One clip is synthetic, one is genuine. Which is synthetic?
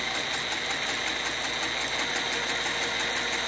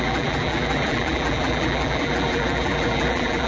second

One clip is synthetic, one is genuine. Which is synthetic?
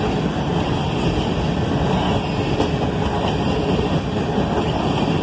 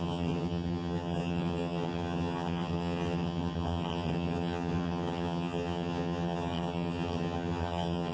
second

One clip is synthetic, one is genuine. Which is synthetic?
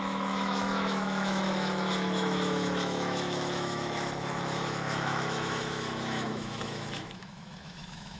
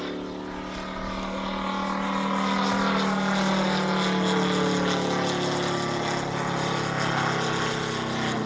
first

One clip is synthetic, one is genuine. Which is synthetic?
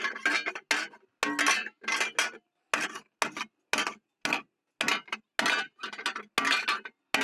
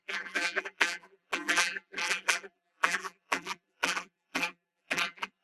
second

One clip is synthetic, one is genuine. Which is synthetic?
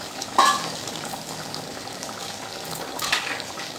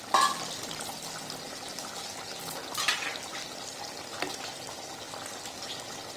first